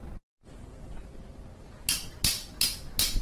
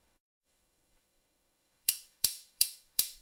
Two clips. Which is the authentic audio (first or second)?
first